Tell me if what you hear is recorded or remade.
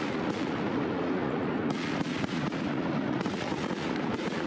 remade